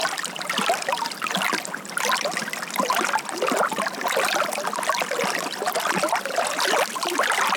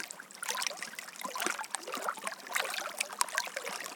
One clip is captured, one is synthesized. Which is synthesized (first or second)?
second